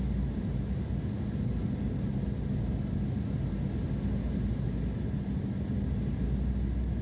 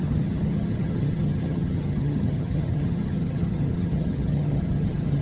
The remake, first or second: second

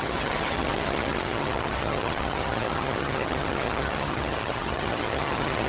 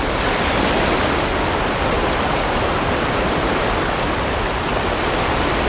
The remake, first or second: first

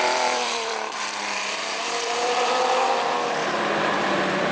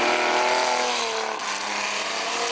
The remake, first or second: first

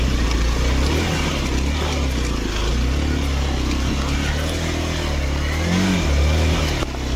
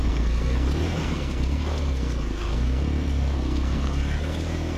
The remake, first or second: second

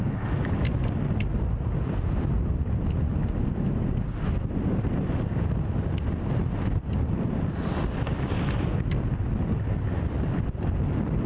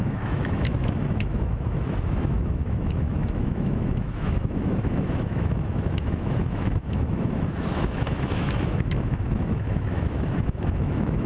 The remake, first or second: second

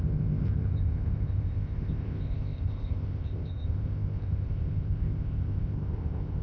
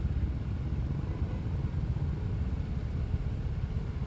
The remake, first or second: first